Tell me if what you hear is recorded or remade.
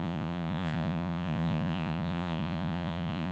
remade